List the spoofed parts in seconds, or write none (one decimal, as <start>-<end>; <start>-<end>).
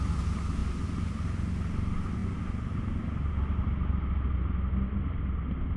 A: none